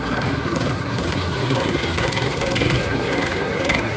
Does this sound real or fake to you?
fake